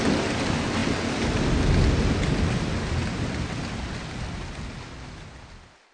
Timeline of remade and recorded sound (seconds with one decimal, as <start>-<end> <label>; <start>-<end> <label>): 0.0-5.9 recorded